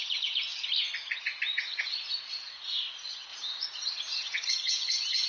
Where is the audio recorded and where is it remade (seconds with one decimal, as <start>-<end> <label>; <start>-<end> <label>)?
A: 0.0-0.5 remade; 0.5-1.5 recorded; 1.5-5.3 remade